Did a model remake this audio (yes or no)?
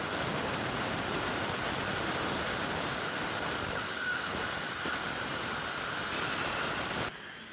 no